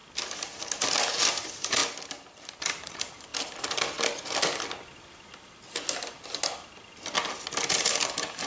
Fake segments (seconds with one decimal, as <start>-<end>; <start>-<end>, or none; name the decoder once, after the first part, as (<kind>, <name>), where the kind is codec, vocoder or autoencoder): 1.3-1.8 (vocoder, BigVGAN v2); 2.6-3.3; 7.7-8.5